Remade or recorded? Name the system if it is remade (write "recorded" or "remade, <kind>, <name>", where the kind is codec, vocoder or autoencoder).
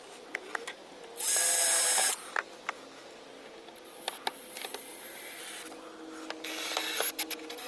recorded